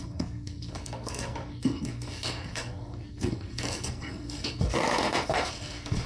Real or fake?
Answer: fake